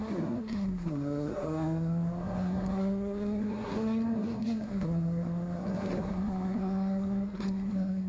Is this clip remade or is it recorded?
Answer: remade